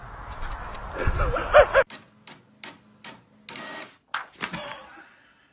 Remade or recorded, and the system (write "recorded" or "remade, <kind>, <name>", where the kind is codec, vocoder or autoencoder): recorded